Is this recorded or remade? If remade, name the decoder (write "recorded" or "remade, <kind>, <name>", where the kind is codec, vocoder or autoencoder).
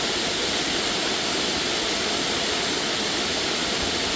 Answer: recorded